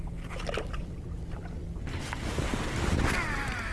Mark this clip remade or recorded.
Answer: recorded